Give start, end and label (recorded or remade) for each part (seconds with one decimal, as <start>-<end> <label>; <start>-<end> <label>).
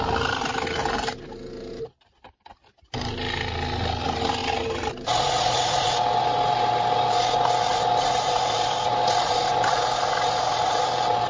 0.0-11.3 recorded